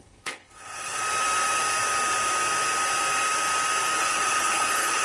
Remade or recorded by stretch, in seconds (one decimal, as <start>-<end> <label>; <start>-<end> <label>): 0.0-1.0 remade; 1.0-4.0 recorded; 4.0-5.0 remade